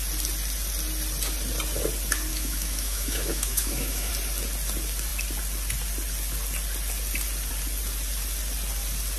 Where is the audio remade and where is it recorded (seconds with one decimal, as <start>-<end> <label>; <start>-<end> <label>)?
0.0-2.3 recorded; 2.3-4.1 remade; 4.1-9.2 recorded